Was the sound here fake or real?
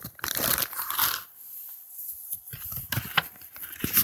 real